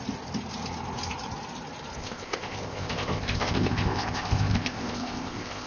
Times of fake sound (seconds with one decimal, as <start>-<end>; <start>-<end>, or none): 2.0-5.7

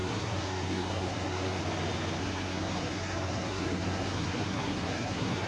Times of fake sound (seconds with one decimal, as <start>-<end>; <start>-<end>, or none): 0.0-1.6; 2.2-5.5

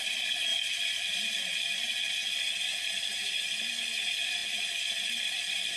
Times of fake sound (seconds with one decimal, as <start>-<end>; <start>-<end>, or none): none

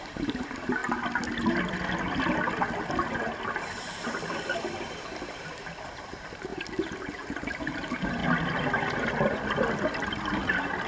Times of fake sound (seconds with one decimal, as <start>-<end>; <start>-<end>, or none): 0.0-0.8; 4.8-6.5; 7.0-8.2; 8.9-10.9

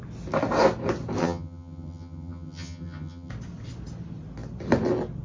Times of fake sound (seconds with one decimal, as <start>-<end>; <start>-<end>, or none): 1.2-3.3